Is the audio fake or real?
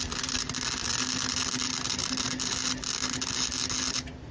real